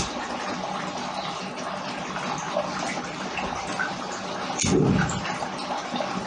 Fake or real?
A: real